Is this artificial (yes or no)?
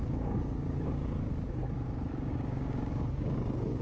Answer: yes